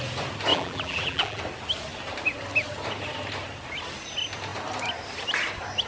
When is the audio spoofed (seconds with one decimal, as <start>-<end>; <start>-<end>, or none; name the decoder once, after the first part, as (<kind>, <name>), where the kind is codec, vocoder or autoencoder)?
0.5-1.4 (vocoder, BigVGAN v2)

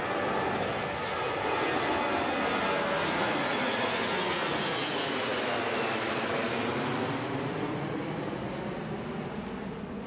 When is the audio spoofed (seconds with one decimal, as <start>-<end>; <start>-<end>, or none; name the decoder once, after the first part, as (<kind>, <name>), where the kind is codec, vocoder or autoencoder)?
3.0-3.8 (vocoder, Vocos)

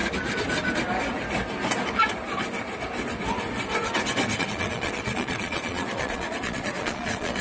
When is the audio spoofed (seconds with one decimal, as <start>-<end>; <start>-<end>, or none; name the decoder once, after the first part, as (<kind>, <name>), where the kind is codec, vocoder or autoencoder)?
4.4-7.4 (vocoder, Vocos)

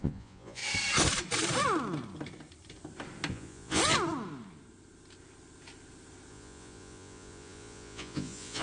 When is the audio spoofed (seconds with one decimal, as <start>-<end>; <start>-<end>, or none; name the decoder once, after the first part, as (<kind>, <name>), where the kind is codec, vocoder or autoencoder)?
0.0-0.6 (vocoder, Vocos); 3.3-3.8; 6.3-8.6

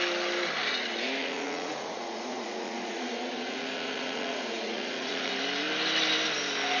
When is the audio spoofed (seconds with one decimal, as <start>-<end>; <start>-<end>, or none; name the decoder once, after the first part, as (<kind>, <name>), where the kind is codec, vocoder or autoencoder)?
1.2-5.3 (vocoder, Vocos)

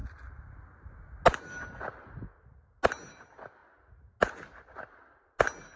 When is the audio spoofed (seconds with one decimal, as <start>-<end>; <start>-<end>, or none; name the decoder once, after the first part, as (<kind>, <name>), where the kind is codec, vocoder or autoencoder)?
none